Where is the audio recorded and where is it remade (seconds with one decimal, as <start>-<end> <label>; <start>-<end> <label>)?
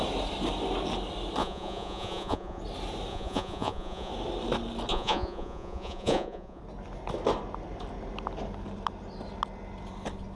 0.0-1.4 recorded; 1.4-2.6 remade; 2.6-3.1 recorded; 3.1-4.1 remade; 4.1-4.9 recorded; 4.9-6.6 remade; 6.6-10.4 recorded